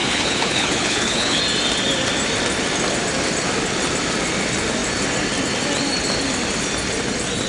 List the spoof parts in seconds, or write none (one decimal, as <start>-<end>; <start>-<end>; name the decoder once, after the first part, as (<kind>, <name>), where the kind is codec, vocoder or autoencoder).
0.0-1.4 (codec, HILCodec)